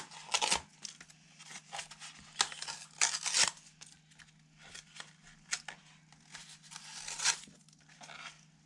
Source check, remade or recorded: recorded